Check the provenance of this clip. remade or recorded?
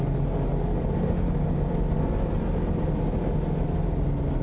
recorded